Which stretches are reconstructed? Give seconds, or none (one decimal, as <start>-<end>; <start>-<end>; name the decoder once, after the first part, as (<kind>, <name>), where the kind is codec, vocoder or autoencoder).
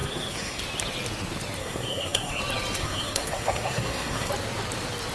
0.0-0.6 (codec, SNAC); 1.6-2.4; 2.8-4.3